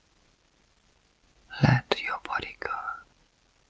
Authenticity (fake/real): real